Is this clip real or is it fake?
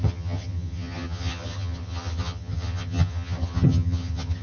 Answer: fake